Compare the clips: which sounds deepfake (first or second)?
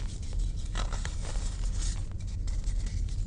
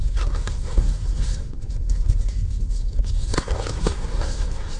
second